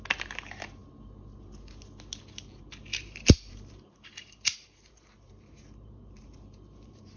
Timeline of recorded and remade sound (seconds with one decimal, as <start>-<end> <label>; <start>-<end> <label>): 0.0-2.9 recorded; 2.9-7.2 remade